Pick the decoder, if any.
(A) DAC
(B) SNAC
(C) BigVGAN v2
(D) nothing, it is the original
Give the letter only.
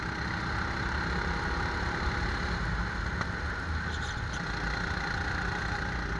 D